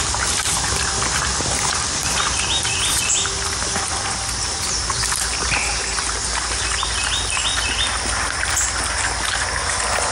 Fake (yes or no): no